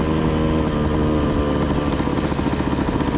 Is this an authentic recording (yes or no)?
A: yes